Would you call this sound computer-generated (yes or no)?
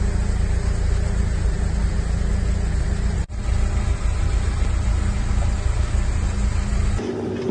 no